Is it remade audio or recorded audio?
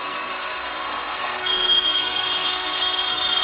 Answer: remade